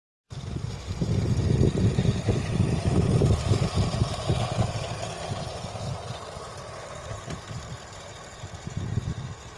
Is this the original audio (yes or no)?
yes